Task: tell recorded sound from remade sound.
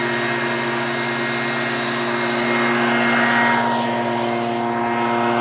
recorded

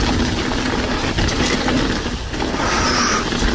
recorded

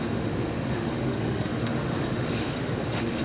remade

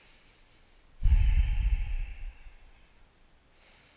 recorded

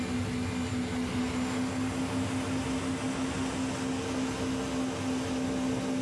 recorded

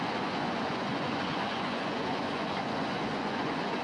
remade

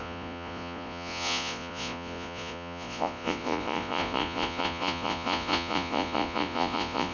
remade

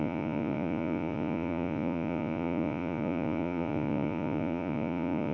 remade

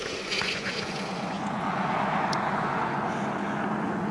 remade